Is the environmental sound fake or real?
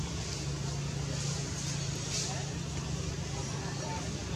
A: real